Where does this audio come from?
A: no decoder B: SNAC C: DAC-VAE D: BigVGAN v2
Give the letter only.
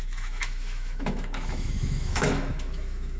C